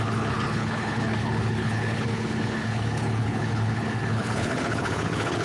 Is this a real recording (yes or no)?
no